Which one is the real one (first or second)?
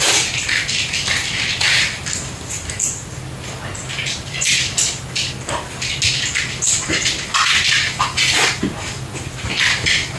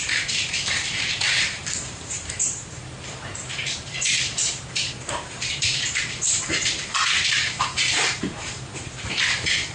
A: first